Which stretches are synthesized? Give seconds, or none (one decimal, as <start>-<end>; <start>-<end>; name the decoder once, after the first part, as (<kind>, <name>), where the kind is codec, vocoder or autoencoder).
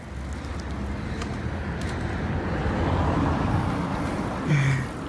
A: 3.9-4.5 (vocoder, BigVGAN v2)